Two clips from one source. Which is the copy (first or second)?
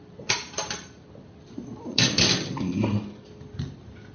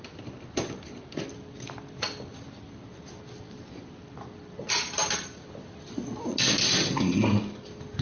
first